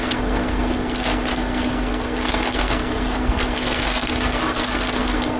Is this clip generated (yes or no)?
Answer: yes